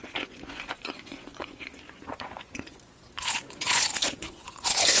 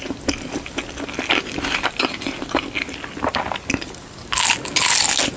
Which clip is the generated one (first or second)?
first